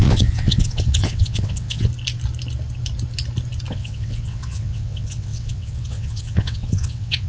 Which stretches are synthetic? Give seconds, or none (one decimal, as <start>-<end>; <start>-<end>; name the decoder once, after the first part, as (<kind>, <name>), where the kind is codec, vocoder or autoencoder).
0.0-1.9 (vocoder, WaveNeXt); 3.7-7.3